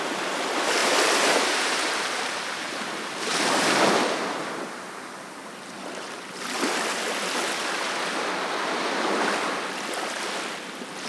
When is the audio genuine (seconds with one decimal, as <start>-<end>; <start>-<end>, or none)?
0.0-0.8; 3.3-11.1